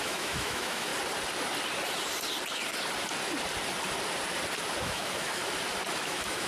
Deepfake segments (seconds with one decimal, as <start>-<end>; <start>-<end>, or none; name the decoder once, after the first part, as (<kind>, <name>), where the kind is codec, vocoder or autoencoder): 0.0-0.9 (autoencoder, DAC-VAE); 4.8-5.4; 5.9-6.5